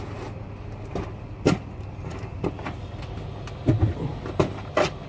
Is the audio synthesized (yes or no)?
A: no